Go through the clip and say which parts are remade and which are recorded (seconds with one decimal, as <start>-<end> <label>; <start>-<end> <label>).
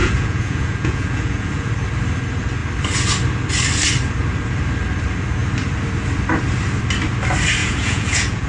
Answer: 0.0-1.7 remade; 1.7-7.6 recorded; 7.6-8.5 remade